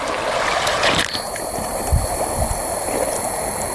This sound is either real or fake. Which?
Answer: real